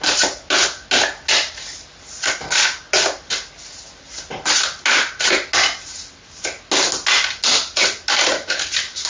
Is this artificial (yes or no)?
no